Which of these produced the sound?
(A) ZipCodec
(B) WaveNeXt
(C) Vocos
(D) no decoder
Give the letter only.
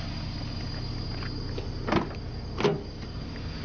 D